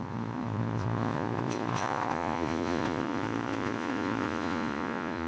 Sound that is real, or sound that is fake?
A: fake